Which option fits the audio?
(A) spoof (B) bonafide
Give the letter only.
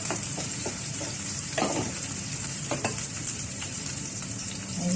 A